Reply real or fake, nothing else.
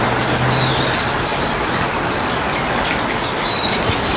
real